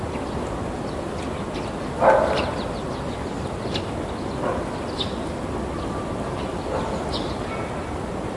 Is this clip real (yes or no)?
yes